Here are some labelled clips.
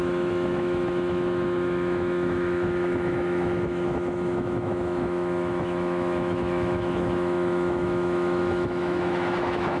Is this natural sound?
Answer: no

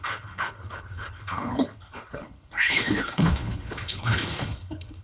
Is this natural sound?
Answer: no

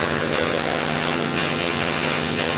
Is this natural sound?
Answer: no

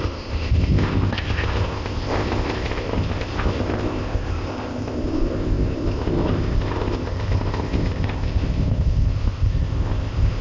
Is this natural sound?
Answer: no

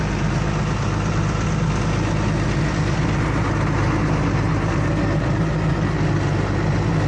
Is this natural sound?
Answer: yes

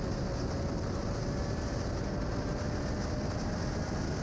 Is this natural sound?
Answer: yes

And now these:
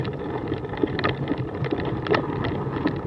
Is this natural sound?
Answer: yes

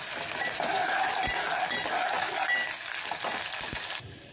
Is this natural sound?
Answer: yes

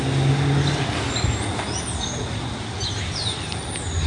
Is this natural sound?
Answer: yes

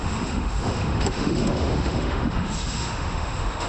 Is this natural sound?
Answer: no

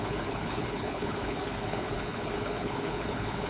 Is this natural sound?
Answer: no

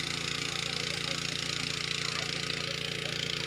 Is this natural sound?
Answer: yes